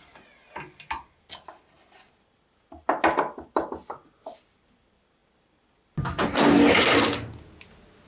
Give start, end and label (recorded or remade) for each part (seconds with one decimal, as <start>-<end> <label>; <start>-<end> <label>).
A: 0.0-8.1 recorded

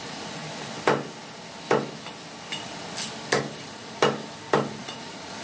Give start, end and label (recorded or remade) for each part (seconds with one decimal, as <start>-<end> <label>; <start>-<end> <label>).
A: 0.0-0.4 remade; 0.4-3.6 recorded; 3.6-4.0 remade; 4.0-4.8 recorded; 4.8-5.4 remade

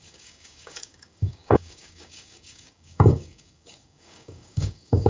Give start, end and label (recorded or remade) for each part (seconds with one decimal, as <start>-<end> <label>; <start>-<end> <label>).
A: 0.0-5.1 remade

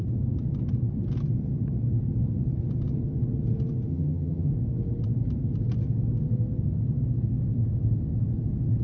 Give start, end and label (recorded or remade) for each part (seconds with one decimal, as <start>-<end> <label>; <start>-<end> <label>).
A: 0.0-3.9 recorded; 3.9-4.5 remade; 4.5-8.8 recorded